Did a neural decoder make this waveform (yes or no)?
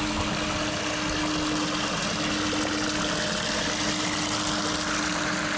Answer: no